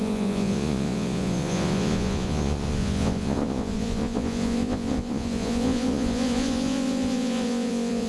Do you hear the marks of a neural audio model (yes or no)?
yes